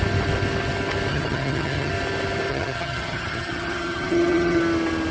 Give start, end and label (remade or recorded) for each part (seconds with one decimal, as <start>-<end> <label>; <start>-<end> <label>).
0.0-1.1 recorded; 1.1-1.9 remade; 1.9-2.5 recorded; 2.5-4.6 remade; 4.6-5.1 recorded